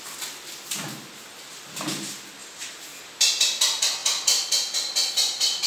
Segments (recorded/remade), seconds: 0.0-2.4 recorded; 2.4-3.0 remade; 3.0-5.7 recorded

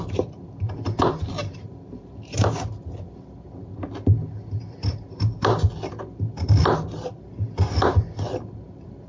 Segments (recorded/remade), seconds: 0.0-1.4 recorded; 1.4-2.5 remade; 2.5-9.1 recorded

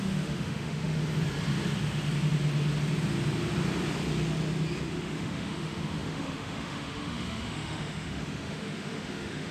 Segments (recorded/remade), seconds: 0.0-1.0 remade; 1.0-4.9 recorded; 4.9-9.5 remade